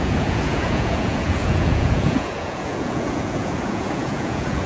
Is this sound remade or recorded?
remade